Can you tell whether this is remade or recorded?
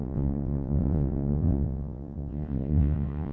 remade